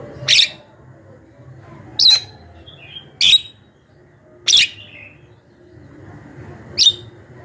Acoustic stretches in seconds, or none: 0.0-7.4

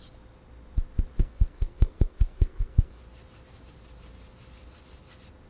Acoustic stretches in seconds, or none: 0.0-1.2; 3.0-5.5

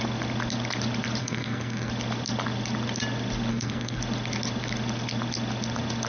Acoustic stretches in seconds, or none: 0.0-1.2; 1.9-3.5; 4.0-6.1

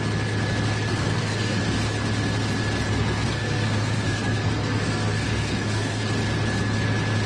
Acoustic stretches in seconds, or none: 0.0-0.9; 1.6-2.9; 6.0-7.3

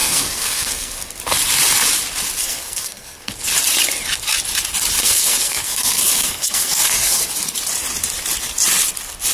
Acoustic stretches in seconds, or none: 1.2-2.4; 3.5-5.0; 7.3-9.3